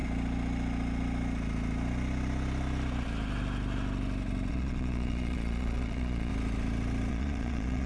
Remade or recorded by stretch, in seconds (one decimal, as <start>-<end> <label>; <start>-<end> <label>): 0.0-4.5 recorded; 4.5-6.3 remade; 6.3-7.1 recorded; 7.1-7.9 remade